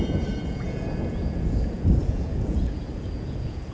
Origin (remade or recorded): remade